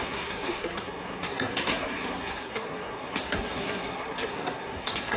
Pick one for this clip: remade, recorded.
remade